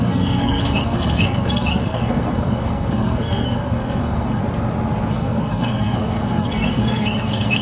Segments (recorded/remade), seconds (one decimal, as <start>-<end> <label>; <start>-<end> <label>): 0.0-4.4 remade; 4.4-5.1 recorded; 5.1-7.6 remade